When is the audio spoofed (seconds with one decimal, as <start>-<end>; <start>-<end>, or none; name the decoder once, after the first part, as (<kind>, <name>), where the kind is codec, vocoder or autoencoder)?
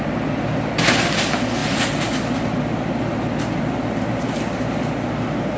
none